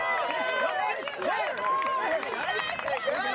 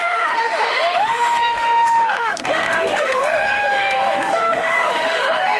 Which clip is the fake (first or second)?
second